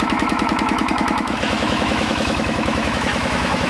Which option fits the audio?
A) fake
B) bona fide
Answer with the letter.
A